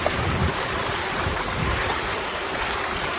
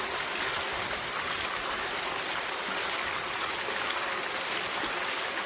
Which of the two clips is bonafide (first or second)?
second